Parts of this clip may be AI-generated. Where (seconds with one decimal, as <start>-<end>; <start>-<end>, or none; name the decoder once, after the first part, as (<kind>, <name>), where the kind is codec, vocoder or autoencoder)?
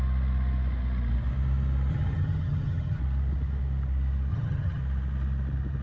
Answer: 1.9-3.0 (vocoder, HiFi-GAN); 4.3-4.8